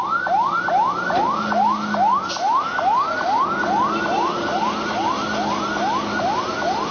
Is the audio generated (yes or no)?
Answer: no